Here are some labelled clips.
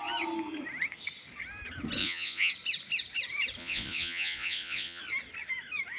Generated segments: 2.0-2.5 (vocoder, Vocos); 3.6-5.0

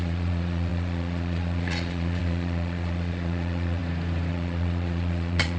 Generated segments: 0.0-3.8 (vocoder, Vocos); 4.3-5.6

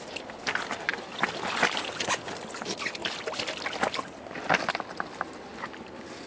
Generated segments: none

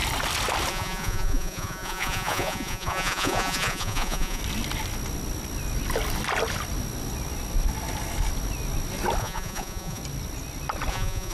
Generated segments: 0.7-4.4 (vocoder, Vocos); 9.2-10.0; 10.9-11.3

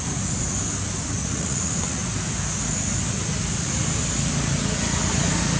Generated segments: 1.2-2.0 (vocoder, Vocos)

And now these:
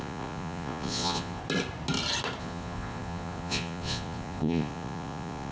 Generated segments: 0.0-1.4 (vocoder, Vocos); 2.4-5.5

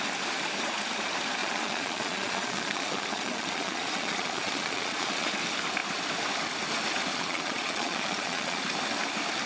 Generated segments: 1.4-5.3 (vocoder, Vocos); 7.1-8.6